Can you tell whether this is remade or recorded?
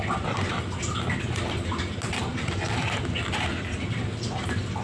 recorded